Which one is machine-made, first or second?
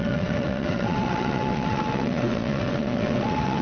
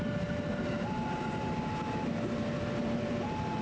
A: first